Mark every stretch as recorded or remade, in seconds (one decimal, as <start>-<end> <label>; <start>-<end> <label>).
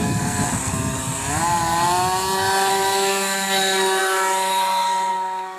0.0-1.2 remade; 1.2-2.7 recorded; 2.7-5.6 remade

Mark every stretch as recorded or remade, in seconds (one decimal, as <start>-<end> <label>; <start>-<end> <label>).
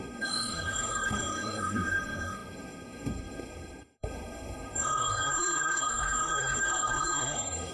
0.0-7.7 remade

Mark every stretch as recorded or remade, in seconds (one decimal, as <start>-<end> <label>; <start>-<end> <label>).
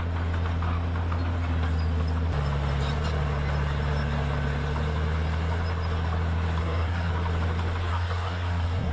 0.0-6.6 recorded; 6.6-7.1 remade; 7.1-7.9 recorded; 7.9-8.9 remade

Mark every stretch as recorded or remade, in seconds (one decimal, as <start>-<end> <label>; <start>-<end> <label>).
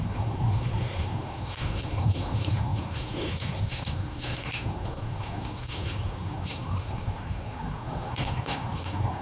0.0-9.2 remade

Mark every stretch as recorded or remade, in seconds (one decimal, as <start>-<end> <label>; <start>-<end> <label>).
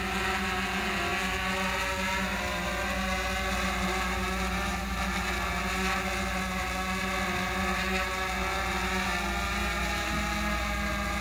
0.0-11.2 recorded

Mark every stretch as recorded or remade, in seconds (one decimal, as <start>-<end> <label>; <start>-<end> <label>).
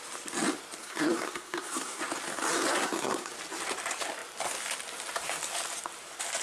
0.0-0.8 recorded; 0.8-2.0 remade; 2.0-2.8 recorded; 2.8-3.3 remade; 3.3-6.4 recorded